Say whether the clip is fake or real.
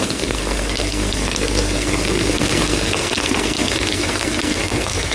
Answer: fake